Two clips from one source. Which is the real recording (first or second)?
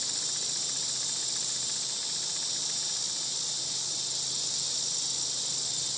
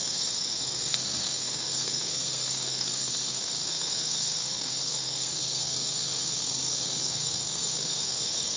first